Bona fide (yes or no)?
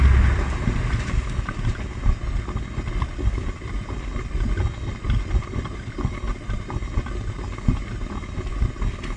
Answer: yes